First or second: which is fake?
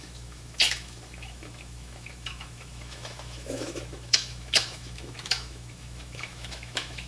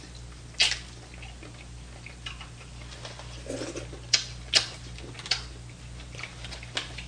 first